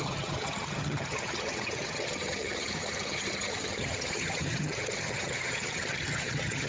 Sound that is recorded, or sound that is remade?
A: remade